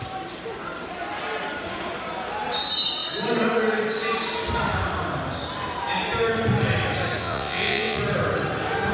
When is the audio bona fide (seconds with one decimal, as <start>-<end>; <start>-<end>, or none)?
0.0-7.2; 8.0-8.9